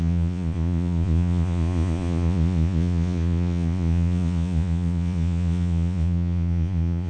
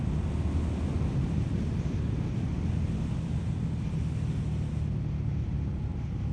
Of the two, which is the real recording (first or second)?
second